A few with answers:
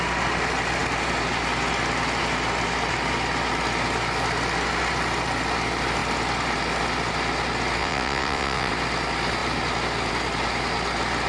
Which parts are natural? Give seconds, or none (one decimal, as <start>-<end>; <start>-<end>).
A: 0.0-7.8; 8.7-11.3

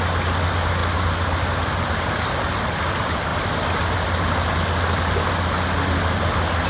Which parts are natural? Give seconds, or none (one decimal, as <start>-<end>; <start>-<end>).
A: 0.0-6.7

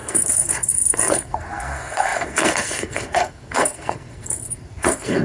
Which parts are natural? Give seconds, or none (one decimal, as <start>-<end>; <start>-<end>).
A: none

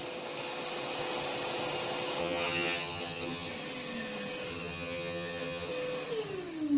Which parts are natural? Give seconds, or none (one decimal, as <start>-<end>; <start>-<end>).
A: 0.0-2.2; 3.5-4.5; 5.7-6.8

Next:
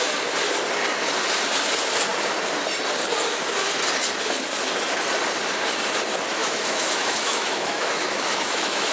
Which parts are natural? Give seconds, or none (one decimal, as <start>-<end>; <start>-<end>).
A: 0.0-6.4

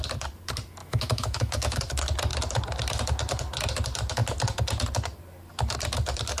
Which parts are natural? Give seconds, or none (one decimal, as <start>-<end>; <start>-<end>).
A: 0.0-0.8; 1.8-6.4

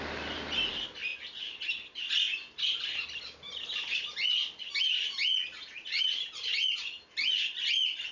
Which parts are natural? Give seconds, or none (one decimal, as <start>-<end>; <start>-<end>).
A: 0.0-8.1